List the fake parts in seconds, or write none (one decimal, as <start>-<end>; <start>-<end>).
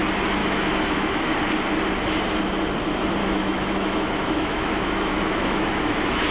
0.4-1.3; 3.2-6.3